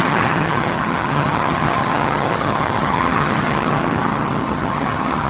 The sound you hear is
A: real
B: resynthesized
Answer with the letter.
B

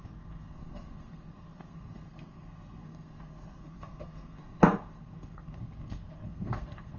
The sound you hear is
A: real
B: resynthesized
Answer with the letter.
B